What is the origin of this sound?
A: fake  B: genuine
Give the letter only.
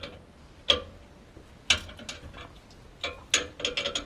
B